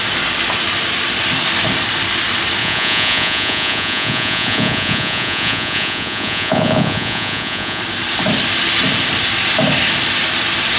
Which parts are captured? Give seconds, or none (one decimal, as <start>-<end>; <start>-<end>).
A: 0.0-2.6; 7.8-10.8